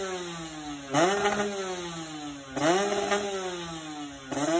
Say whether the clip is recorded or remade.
recorded